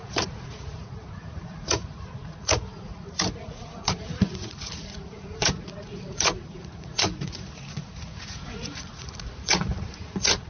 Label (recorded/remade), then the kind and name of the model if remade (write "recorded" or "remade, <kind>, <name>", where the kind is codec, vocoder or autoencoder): remade, vocoder, Vocos